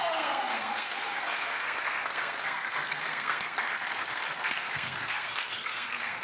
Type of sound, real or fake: fake